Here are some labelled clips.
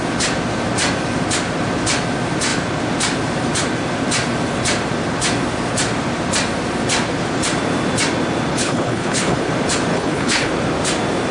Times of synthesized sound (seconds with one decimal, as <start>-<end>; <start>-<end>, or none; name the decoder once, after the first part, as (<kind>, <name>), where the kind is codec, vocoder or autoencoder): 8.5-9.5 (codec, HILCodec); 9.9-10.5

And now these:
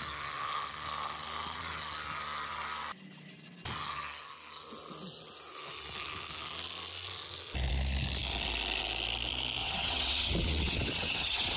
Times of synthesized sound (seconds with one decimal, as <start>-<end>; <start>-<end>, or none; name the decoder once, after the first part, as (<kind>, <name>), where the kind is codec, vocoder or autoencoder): 9.6-11.6 (vocoder, WaveNeXt)

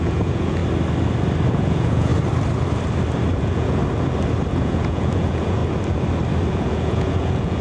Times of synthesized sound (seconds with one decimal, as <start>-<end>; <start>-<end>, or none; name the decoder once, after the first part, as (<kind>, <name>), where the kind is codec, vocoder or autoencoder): 0.0-0.6 (vocoder, Vocos); 1.5-2.1; 3.4-3.8; 4.5-5.6; 6.5-7.6

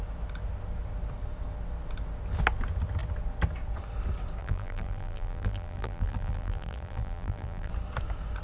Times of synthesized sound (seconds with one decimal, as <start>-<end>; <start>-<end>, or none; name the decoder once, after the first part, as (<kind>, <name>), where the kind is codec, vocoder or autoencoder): 4.4-7.7 (vocoder, BigVGAN v2)